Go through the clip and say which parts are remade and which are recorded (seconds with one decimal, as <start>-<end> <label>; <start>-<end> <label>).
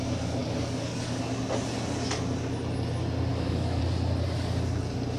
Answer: 0.0-0.4 recorded; 0.4-1.2 remade; 1.2-3.3 recorded; 3.3-3.8 remade; 3.8-5.2 recorded